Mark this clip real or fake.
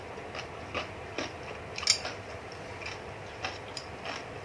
real